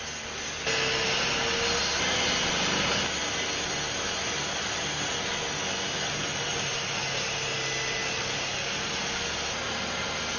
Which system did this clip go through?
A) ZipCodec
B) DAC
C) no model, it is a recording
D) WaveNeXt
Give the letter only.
C